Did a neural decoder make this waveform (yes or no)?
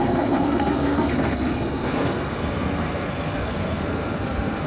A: yes